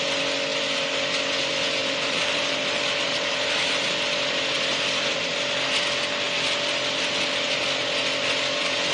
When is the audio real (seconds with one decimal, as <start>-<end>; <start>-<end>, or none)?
0.0-1.8; 3.9-8.9